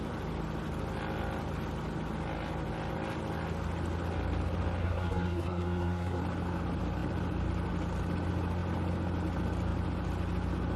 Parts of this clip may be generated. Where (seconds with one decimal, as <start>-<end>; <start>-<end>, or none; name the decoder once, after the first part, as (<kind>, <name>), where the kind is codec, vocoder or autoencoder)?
4.8-6.2 (codec, SNAC)